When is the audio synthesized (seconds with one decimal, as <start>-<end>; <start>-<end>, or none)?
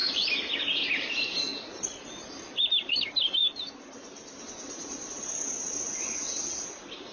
0.6-1.5; 2.3-7.1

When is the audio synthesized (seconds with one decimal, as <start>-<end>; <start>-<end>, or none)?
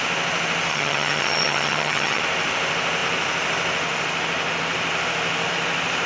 0.7-2.2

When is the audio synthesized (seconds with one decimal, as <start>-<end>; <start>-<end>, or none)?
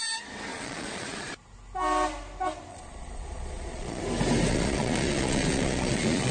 0.5-1.3; 2.7-4.0; 4.5-6.3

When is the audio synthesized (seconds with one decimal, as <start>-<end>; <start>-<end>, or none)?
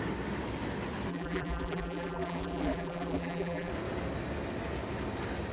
1.1-3.7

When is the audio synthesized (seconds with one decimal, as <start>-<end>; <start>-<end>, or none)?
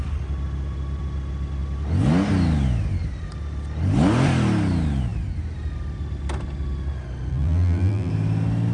7.3-8.1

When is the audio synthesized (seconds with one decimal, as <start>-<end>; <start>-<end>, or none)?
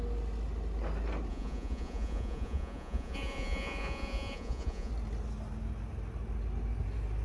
1.3-4.9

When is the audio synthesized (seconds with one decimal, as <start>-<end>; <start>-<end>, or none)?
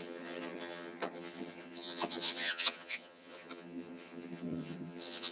0.0-5.3